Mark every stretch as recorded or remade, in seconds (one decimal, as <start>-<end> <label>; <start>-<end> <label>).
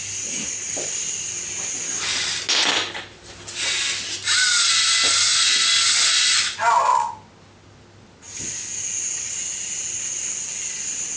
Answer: 0.0-11.2 recorded